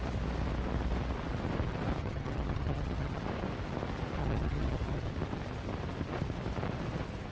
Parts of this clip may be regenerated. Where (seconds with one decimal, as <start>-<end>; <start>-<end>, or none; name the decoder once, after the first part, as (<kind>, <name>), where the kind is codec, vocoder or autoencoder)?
2.0-3.2 (vocoder, HiFi-GAN); 4.2-5.1